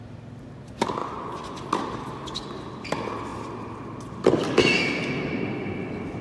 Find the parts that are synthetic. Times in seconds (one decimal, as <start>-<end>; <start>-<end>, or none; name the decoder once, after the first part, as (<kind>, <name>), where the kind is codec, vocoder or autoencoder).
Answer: 1.0-1.6 (vocoder, Vocos)